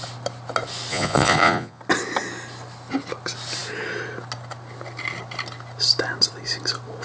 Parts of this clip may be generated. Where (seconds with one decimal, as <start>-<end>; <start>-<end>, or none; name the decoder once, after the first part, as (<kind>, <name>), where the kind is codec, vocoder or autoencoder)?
0.9-1.8 (vocoder, Vocos)